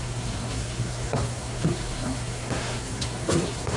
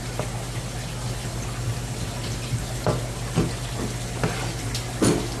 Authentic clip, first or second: second